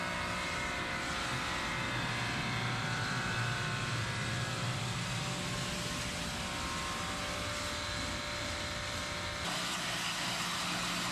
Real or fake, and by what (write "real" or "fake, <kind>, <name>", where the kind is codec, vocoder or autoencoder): real